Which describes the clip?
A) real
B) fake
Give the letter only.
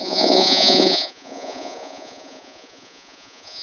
B